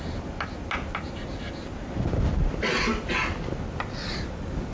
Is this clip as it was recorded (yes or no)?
yes